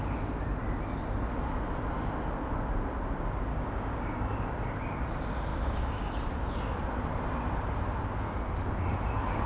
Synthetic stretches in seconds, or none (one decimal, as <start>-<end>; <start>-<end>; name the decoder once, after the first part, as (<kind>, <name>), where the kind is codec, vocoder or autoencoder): 3.5-4.5 (codec, DAC); 5.5-6.1